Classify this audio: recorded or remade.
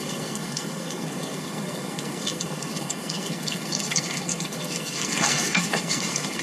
remade